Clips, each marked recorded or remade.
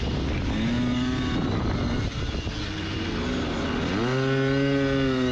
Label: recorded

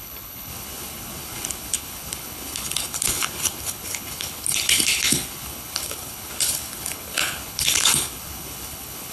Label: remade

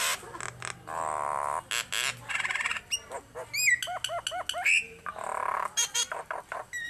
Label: recorded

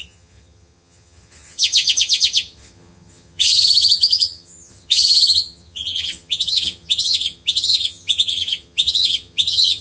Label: remade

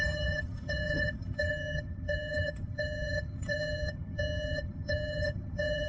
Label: remade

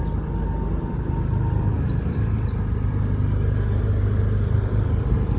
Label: recorded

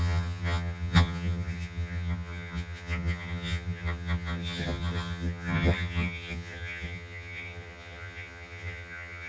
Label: remade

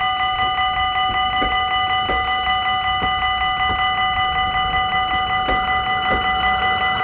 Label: recorded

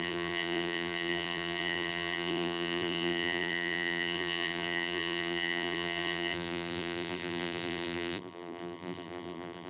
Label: remade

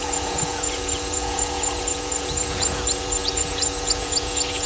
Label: remade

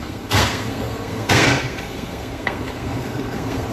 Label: remade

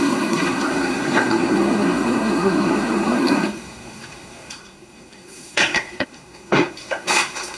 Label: remade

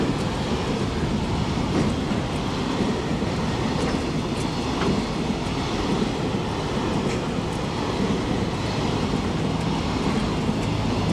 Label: recorded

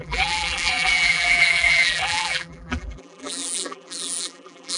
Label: remade